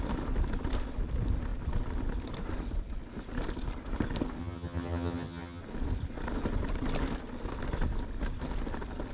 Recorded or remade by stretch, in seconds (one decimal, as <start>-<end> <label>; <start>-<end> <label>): 0.0-4.4 recorded; 4.4-5.6 remade; 5.6-9.1 recorded